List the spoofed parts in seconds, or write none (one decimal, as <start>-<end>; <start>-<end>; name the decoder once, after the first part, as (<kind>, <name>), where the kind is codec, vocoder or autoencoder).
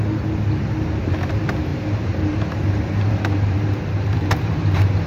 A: 1.7-5.1 (vocoder, BigVGAN v2)